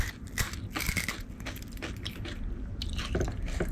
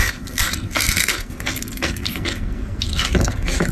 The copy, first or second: second